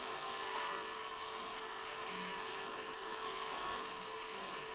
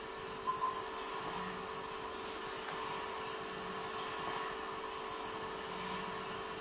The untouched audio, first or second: second